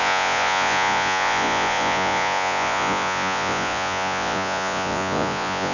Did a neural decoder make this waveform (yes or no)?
yes